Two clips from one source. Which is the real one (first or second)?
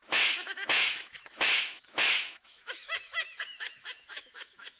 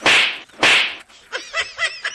second